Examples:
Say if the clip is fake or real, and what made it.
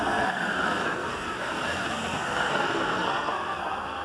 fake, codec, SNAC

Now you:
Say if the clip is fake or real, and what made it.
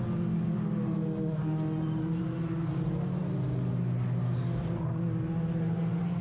real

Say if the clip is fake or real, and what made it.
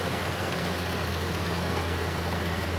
fake, codec, SNAC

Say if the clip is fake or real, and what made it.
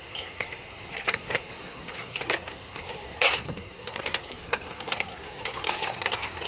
fake, codec, SNAC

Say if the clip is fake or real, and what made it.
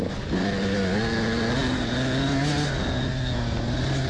real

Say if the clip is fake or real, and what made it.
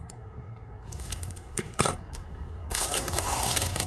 fake, codec, SNAC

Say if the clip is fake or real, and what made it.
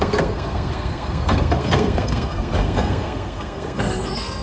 fake, codec, SNAC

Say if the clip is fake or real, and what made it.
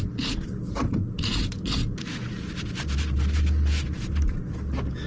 real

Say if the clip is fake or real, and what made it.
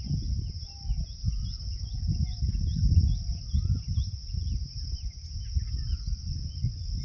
real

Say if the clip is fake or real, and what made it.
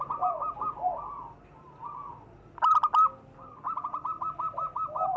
real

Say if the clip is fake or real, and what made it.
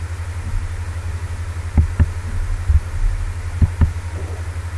real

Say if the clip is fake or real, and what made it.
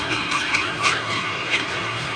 fake, codec, SNAC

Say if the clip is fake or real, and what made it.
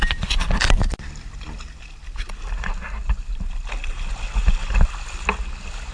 real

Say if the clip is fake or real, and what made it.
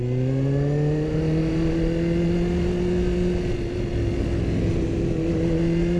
real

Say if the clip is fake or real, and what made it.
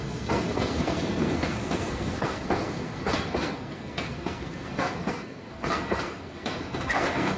fake, codec, SNAC